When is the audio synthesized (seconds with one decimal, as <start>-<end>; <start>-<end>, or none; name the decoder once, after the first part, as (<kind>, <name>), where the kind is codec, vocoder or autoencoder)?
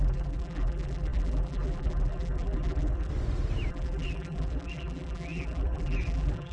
0.0-3.1 (vocoder, BigVGAN v2); 3.7-6.5